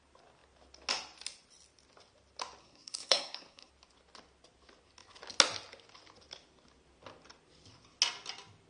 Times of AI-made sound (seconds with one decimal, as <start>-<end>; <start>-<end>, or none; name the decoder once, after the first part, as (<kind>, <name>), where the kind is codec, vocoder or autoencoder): 2.6-3.7 (codec, SNAC)